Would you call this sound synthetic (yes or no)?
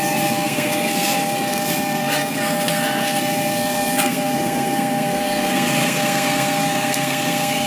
yes